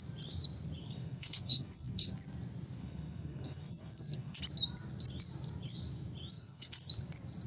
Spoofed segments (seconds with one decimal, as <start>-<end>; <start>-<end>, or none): 0.8-2.1; 2.8-4.4; 6.3-6.9